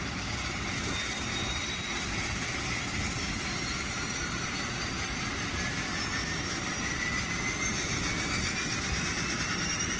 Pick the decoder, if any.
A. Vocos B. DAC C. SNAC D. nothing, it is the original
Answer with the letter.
D